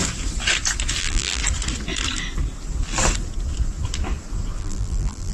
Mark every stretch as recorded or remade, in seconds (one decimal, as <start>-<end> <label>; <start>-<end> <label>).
0.0-1.0 recorded; 1.0-1.4 remade; 1.4-4.6 recorded; 4.6-5.3 remade

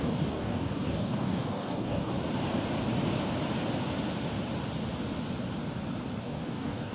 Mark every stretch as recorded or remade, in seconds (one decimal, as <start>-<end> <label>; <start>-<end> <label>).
0.0-2.1 remade; 2.1-6.2 recorded; 6.2-6.9 remade